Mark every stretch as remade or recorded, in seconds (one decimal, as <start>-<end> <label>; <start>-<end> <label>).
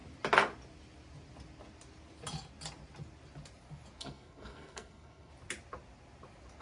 0.0-4.0 recorded; 4.0-5.3 remade; 5.3-6.6 recorded